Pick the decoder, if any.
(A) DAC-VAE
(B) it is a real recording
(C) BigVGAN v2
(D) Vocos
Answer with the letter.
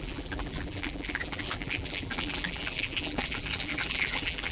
C